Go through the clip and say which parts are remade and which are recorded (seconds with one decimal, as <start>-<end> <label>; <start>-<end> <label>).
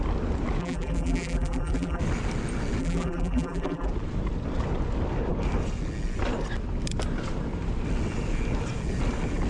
0.0-0.6 recorded; 0.6-2.0 remade; 2.0-2.8 recorded; 2.8-3.9 remade; 3.9-9.5 recorded